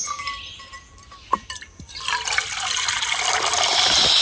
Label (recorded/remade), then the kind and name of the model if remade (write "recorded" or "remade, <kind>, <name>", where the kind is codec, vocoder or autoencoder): recorded